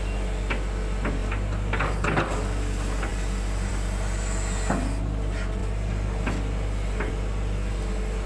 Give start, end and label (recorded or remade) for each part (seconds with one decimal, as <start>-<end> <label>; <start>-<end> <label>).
0.0-8.3 recorded